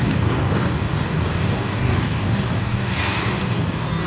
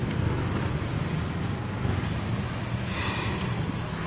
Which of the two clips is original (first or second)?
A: second